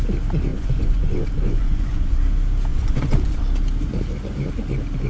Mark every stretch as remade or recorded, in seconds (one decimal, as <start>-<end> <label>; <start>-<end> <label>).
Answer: 0.0-0.5 recorded; 0.5-2.2 remade; 2.2-2.7 recorded; 2.7-3.4 remade; 3.4-5.1 recorded